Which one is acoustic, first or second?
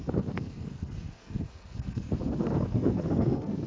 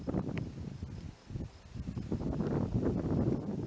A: second